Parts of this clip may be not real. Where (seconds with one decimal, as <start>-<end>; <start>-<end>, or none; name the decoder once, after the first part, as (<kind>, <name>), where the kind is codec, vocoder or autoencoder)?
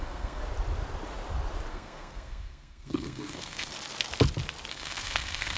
0.0-0.4 (codec, SNAC); 1.7-3.7; 4.7-5.6